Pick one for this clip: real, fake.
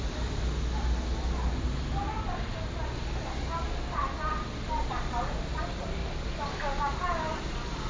real